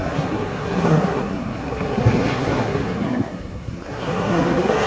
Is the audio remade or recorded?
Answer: remade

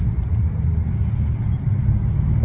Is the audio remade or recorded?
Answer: recorded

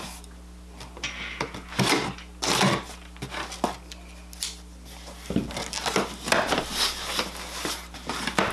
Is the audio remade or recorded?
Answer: recorded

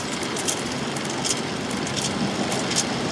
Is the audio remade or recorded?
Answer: recorded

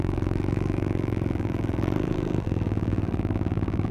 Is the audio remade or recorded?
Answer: remade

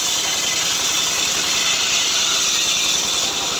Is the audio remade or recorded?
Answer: recorded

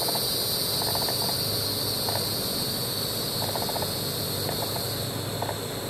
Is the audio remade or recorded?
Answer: recorded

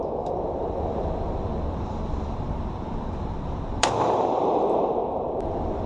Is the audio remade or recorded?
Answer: remade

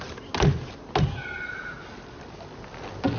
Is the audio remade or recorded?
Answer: recorded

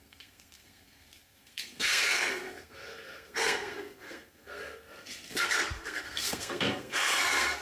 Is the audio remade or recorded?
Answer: remade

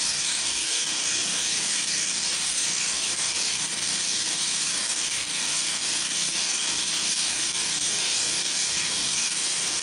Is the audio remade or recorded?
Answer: remade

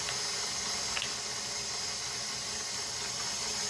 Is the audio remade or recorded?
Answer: recorded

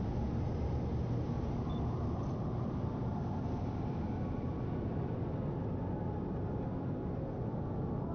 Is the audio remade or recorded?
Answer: recorded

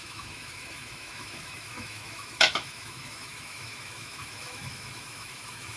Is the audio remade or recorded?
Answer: remade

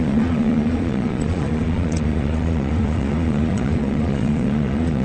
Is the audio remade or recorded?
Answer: remade